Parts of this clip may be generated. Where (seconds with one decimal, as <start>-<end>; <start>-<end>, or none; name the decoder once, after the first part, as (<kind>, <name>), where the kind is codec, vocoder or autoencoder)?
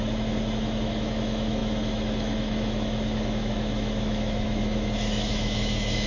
0.0-6.1 (autoencoder, DAC-VAE)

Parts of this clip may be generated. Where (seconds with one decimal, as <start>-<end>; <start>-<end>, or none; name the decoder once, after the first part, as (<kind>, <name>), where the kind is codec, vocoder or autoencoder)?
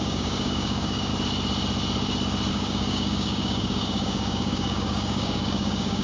0.0-1.1 (codec, DAC); 2.5-6.0